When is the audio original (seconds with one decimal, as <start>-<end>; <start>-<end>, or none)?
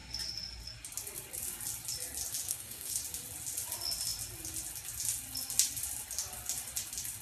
0.0-2.5; 3.0-7.2